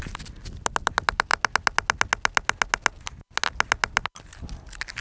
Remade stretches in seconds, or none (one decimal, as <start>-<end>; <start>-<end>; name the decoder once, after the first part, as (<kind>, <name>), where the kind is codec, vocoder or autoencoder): none